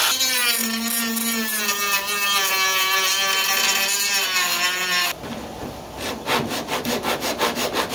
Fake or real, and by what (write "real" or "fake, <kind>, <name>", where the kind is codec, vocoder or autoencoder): real